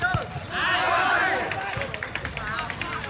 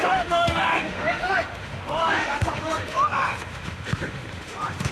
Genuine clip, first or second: first